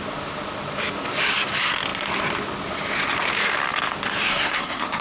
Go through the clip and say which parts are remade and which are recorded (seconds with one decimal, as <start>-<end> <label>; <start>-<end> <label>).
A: 0.0-4.3 recorded; 4.3-5.0 remade